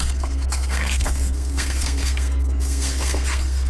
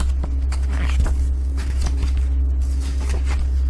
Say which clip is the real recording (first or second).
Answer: second